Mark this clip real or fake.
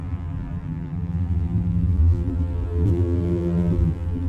fake